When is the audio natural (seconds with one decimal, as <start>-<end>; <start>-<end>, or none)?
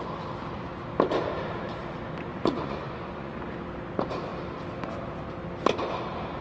0.0-2.3; 3.4-6.4